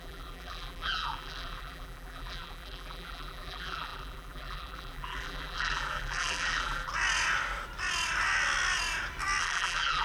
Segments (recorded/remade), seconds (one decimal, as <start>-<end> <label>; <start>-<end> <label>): 0.0-6.9 remade; 6.9-9.4 recorded; 9.4-10.0 remade